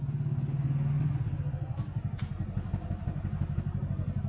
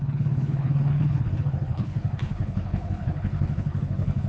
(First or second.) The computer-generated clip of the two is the second